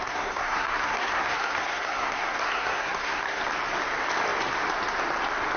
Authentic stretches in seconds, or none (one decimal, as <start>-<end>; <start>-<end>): 3.4-5.6